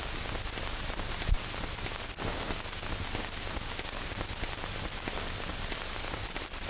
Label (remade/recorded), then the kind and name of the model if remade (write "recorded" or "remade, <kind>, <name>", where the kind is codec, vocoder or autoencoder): recorded